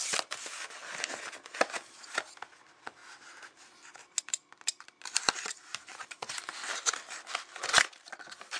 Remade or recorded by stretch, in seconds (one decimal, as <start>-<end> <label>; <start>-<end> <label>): 0.0-5.7 recorded; 5.7-7.0 remade; 7.0-8.6 recorded